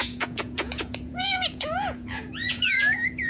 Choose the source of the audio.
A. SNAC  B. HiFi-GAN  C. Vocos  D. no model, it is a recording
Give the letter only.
C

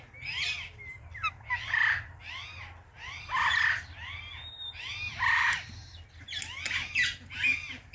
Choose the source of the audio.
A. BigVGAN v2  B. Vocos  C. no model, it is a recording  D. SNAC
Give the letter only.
C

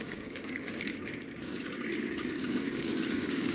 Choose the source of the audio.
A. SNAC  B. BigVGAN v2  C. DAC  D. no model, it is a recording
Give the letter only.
C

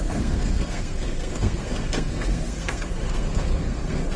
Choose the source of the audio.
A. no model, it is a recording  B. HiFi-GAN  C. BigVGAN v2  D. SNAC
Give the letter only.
D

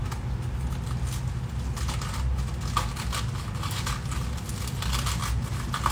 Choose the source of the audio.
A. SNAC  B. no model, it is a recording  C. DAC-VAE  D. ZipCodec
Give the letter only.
B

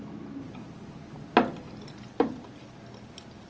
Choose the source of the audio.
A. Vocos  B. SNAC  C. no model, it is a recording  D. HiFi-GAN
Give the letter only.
C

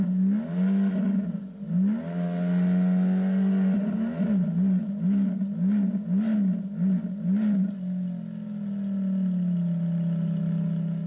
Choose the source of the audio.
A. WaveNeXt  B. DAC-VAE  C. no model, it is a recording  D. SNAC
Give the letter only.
C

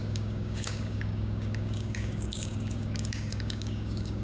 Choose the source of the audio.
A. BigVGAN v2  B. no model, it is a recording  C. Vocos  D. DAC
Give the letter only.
D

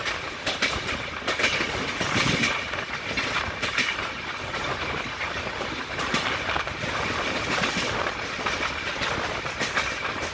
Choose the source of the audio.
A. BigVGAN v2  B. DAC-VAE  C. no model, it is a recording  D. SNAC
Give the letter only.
A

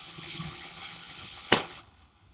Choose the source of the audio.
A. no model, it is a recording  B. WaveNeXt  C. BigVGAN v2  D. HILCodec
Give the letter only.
D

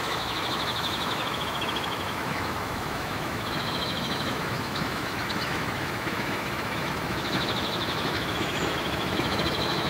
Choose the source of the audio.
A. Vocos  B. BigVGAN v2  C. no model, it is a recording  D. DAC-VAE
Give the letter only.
D